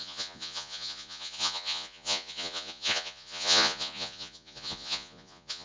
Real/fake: fake